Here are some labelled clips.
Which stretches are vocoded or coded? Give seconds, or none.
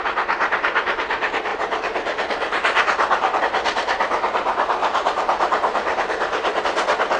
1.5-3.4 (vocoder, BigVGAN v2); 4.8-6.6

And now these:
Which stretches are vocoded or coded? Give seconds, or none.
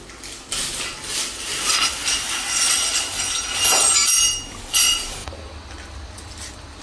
none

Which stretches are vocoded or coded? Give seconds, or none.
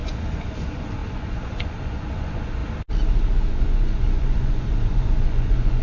0.0-2.6 (vocoder, Vocos); 3.5-5.8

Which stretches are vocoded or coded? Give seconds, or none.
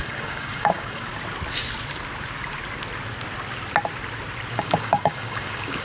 0.0-1.1 (codec, DAC); 4.5-5.8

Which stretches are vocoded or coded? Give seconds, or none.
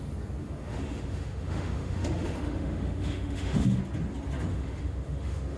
0.4-3.8 (autoencoder, DAC-VAE); 4.5-5.6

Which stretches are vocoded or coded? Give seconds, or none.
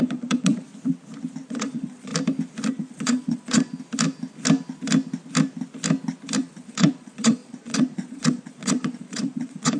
0.0-0.7 (vocoder, Vocos); 1.5-2.1; 2.7-3.7; 6.4-9.8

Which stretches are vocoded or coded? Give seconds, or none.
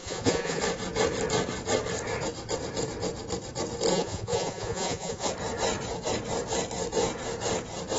0.0-0.6 (vocoder, Vocos); 3.9-5.3